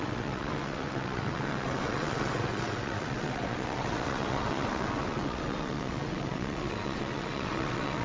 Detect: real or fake fake